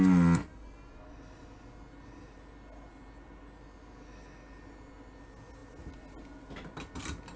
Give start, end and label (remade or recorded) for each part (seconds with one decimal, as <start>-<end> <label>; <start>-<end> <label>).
0.0-7.4 recorded